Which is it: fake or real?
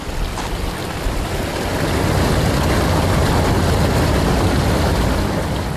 real